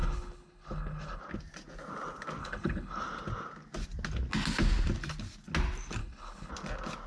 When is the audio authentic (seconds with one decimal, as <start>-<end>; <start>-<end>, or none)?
1.2-2.4; 3.0-6.0; 6.5-7.1